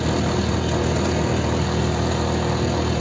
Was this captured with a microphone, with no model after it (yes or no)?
yes